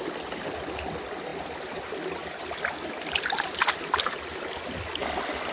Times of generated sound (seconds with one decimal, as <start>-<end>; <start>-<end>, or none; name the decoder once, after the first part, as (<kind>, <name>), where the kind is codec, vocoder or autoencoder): none